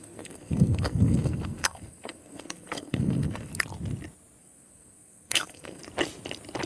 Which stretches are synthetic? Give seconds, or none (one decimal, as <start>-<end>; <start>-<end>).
0.0-3.5; 4.4-5.8